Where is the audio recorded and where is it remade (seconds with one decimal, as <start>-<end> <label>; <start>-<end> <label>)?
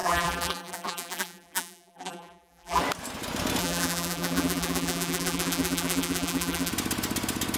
0.0-2.8 remade; 2.8-3.6 recorded; 3.6-6.7 remade; 6.7-7.6 recorded